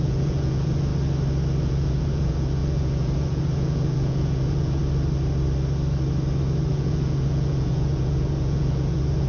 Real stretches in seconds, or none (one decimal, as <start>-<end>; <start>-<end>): 0.9-1.6; 4.8-6.7

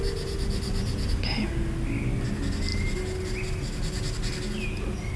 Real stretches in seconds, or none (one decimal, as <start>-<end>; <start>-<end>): 0.0-5.2

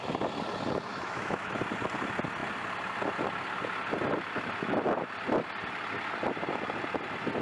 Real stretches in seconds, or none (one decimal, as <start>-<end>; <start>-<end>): 0.0-0.9; 1.5-7.4

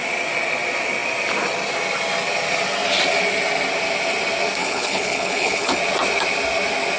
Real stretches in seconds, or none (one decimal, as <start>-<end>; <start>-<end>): 0.0-4.6; 5.8-7.0

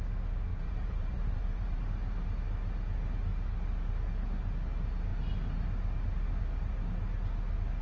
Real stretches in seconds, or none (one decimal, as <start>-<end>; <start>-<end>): 0.0-0.5; 1.8-7.8

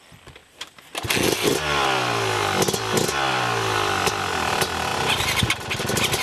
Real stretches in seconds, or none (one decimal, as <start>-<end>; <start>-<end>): 0.0-6.2